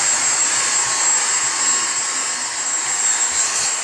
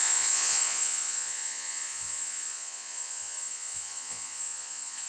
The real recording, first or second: first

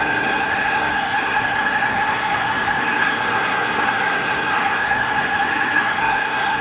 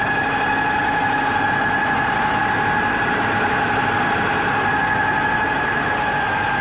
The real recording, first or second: second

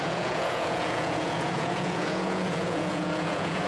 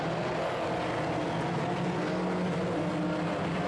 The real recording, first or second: second